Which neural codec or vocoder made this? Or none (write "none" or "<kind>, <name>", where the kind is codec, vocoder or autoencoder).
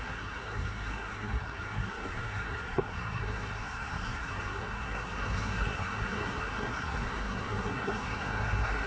codec, SNAC